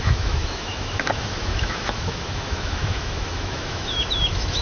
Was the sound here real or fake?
fake